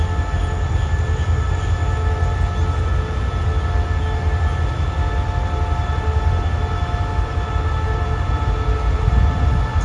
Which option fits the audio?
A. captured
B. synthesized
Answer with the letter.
A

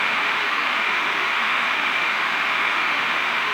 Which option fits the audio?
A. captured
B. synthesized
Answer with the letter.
B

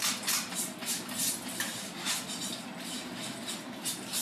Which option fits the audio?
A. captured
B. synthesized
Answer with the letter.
A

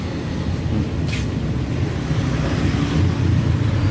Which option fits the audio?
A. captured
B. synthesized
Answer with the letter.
A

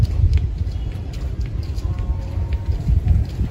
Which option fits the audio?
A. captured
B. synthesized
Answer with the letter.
A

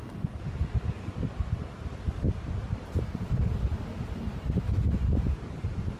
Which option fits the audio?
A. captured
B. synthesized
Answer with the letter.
A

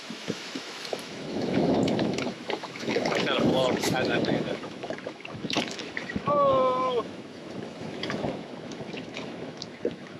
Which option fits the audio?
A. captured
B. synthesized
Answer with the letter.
B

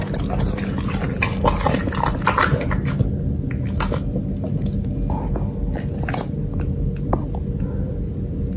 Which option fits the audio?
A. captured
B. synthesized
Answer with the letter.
A